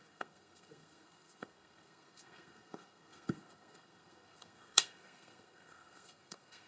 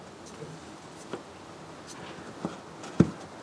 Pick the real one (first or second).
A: second